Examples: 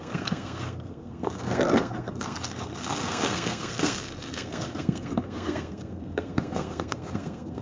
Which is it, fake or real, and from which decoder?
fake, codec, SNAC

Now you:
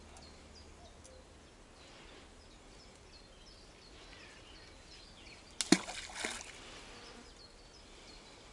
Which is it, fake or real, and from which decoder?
real